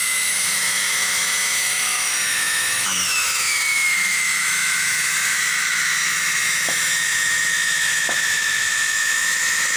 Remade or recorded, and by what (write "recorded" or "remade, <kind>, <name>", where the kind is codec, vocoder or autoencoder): remade, autoencoder, DAC-VAE